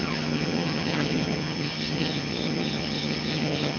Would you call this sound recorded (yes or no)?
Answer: no